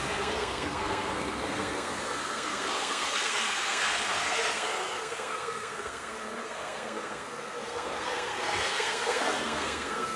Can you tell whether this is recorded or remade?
remade